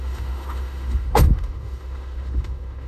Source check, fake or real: fake